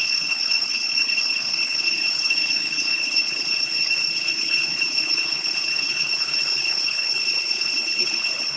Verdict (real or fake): fake